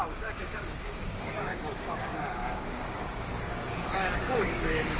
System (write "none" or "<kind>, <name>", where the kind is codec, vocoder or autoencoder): codec, DAC